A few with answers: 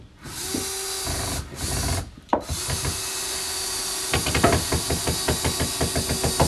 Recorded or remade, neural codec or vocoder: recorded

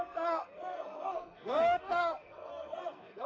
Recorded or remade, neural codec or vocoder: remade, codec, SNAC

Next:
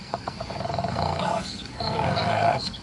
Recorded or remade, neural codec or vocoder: remade, codec, SNAC